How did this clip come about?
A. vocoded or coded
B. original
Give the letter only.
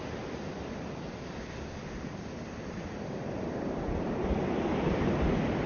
B